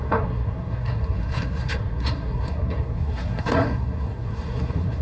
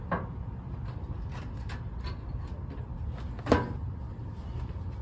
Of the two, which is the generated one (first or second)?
first